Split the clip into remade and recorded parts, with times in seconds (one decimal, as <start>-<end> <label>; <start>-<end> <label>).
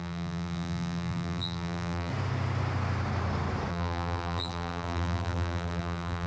0.0-2.1 remade; 2.1-3.7 recorded; 3.7-6.3 remade